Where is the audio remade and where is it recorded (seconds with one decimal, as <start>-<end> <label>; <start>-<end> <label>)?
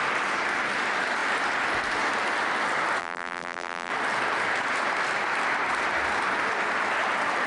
0.0-3.0 recorded; 3.0-3.9 remade; 3.9-7.5 recorded